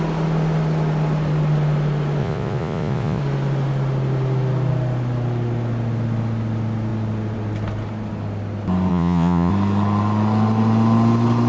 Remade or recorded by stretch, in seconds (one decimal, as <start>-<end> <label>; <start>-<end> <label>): 0.0-2.2 recorded; 2.2-3.2 remade; 3.2-8.9 recorded; 8.9-9.5 remade; 9.5-11.5 recorded